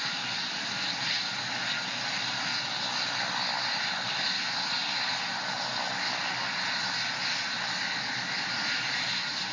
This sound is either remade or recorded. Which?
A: recorded